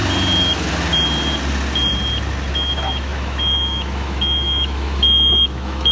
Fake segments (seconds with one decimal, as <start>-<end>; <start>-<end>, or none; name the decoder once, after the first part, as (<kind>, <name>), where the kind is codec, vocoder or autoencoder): 2.5-5.9 (autoencoder, DAC-VAE)